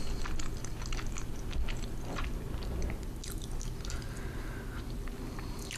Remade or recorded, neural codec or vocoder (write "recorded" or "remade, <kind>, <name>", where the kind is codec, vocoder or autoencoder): recorded